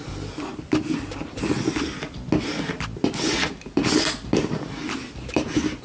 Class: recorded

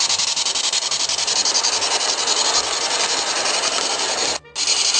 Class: recorded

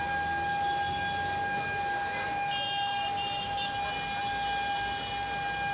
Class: recorded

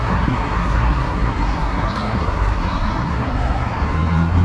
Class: remade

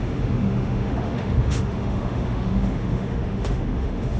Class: remade